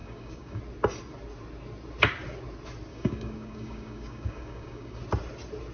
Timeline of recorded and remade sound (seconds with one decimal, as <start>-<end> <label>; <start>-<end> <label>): 0.0-0.6 remade; 0.6-2.9 recorded; 2.9-5.0 remade; 5.0-5.7 recorded